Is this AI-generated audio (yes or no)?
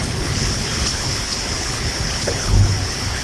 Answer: yes